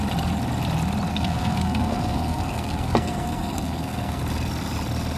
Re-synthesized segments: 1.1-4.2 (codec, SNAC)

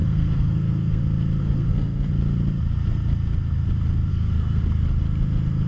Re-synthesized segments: 0.0-1.0 (codec, SNAC); 1.4-2.1; 4.1-4.6